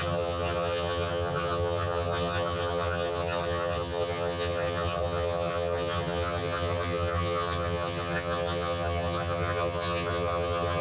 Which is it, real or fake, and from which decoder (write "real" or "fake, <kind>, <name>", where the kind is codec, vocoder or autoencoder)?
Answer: fake, vocoder, HiFi-GAN